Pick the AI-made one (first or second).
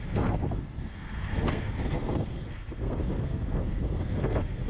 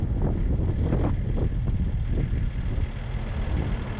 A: first